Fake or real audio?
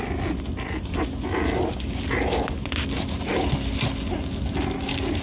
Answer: real